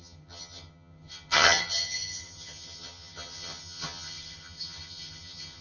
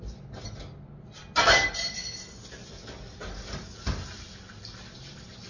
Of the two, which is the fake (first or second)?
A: first